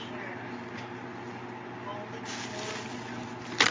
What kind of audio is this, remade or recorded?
recorded